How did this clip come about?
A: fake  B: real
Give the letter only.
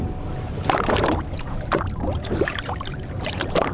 A